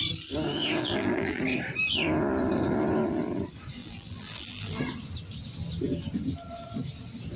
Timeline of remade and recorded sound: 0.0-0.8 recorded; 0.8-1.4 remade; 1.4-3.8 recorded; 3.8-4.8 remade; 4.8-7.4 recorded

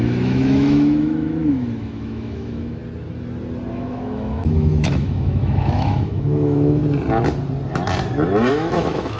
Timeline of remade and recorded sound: 0.0-2.8 remade; 2.8-3.7 recorded; 3.7-6.8 remade; 6.8-8.5 recorded; 8.5-9.2 remade

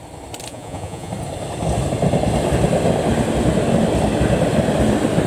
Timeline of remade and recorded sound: 0.0-0.5 recorded; 0.5-1.1 remade; 1.1-5.3 recorded

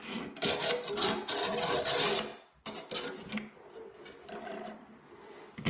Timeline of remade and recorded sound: 0.0-5.7 recorded

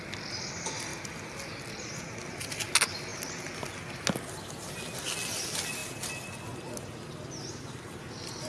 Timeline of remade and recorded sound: 0.0-8.5 recorded

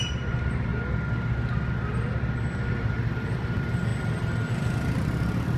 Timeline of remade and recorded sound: 0.0-0.7 remade; 0.7-2.4 recorded; 2.4-3.9 remade; 3.9-4.5 recorded; 4.5-5.6 remade